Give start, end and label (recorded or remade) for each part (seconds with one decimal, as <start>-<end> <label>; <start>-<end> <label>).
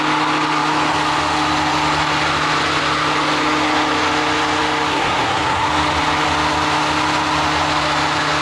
0.0-4.9 recorded; 4.9-5.7 remade; 5.7-8.4 recorded